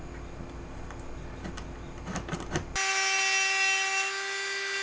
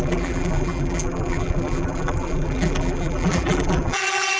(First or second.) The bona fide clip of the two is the first